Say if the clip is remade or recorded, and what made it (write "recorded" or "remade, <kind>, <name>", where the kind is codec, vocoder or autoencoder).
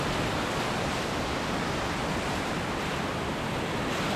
recorded